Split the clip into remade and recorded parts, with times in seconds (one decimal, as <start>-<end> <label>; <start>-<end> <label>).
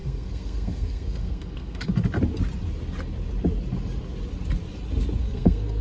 0.0-1.9 remade; 1.9-5.2 recorded; 5.2-5.8 remade